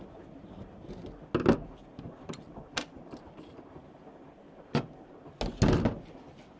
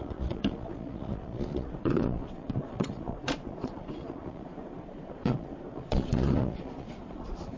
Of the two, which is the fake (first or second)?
second